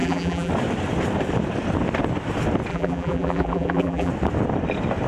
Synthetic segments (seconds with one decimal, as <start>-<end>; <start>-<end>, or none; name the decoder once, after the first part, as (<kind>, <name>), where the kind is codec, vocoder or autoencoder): 0.0-0.5 (vocoder, BigVGAN v2); 2.7-4.1